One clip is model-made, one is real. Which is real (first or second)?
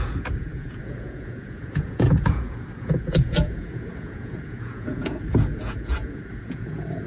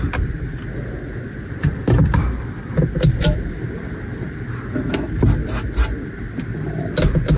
second